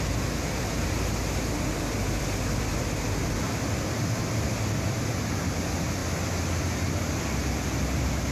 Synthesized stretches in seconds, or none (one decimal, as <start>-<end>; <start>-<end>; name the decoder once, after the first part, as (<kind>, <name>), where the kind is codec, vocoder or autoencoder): none